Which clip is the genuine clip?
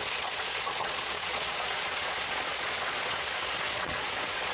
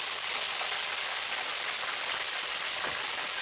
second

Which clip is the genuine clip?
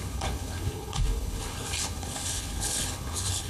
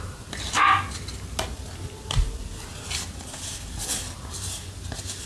second